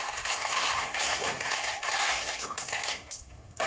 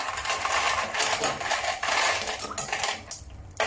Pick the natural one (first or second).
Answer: second